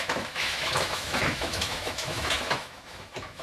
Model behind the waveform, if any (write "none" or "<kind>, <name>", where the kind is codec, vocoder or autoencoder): autoencoder, DAC-VAE